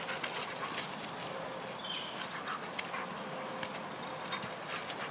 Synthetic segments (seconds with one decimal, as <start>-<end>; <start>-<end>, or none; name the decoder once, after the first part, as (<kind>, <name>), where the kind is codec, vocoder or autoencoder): none

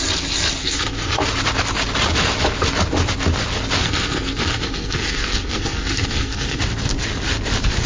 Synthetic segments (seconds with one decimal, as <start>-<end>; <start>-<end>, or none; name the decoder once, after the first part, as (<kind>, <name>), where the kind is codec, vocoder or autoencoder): 0.6-1.2 (codec, SNAC); 3.8-6.6

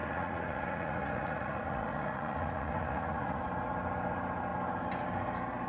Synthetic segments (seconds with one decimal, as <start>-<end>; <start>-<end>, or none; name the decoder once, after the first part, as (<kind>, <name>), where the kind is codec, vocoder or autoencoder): 0.0-3.4 (vocoder, Vocos)

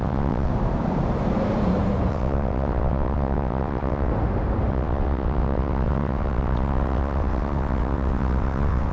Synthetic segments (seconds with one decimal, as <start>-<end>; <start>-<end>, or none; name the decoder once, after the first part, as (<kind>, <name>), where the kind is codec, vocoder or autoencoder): 0.0-0.5 (vocoder, WaveNeXt); 2.1-4.1; 4.7-8.9